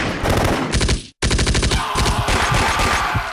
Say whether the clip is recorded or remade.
recorded